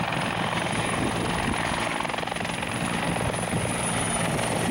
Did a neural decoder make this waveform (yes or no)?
no